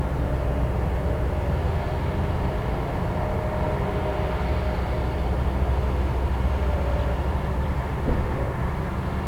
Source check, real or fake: real